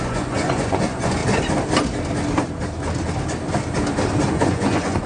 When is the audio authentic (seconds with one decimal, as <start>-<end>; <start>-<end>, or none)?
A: 1.2-4.3